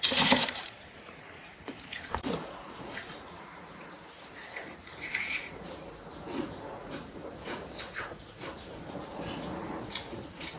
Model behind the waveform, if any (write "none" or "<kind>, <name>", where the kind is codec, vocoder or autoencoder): vocoder, Vocos